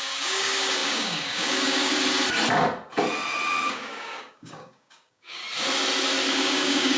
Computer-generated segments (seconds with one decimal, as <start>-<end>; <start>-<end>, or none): 0.0-1.9; 3.7-5.4; 6.3-7.0